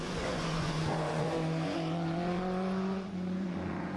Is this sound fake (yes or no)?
yes